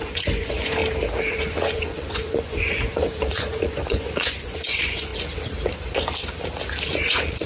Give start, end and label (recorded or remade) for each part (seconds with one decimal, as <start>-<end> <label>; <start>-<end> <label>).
0.0-0.8 remade; 0.8-1.3 recorded; 1.3-5.1 remade; 5.1-6.8 recorded; 6.8-7.5 remade